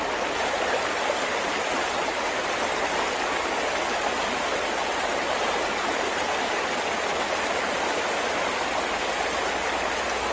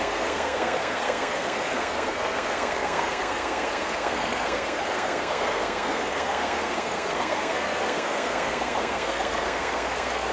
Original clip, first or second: first